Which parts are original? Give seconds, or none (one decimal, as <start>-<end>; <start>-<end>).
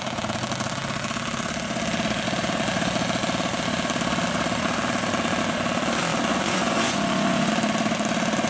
0.0-6.3; 7.5-8.5